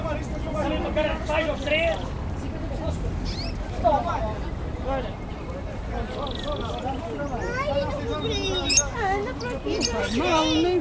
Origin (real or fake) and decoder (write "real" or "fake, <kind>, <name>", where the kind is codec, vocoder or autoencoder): real